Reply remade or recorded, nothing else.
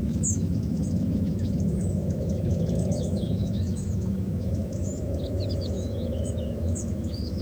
remade